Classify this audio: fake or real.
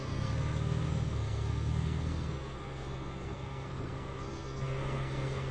fake